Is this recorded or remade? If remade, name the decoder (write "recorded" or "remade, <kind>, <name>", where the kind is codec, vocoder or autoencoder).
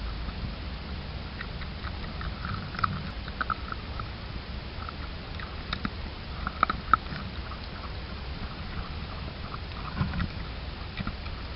recorded